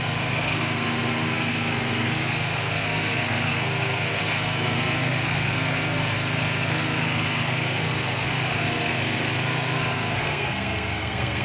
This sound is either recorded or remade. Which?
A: remade